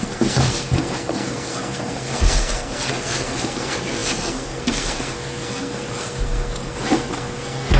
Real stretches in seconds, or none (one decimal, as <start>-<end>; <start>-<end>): none

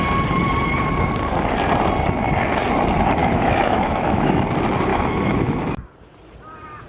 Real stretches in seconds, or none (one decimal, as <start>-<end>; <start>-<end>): 0.0-3.2; 4.4-4.9; 5.8-6.9